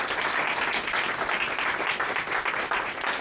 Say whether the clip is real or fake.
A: real